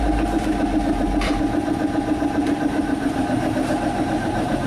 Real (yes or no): no